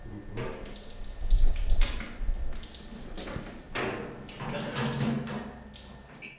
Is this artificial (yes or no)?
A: no